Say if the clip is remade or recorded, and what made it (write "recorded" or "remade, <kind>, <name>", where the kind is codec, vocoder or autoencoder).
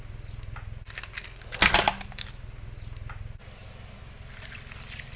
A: recorded